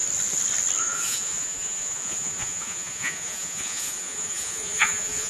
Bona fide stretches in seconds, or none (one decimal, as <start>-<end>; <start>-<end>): 0.0-0.8